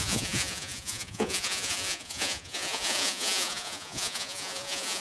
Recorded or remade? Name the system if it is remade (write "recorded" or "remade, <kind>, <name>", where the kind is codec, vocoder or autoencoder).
remade, vocoder, Vocos